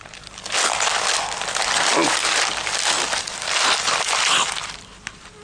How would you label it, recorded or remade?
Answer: recorded